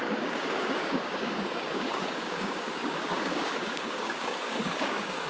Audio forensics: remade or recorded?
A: remade